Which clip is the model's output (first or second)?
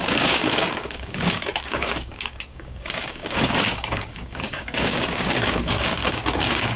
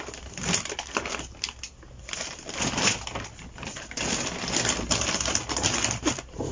first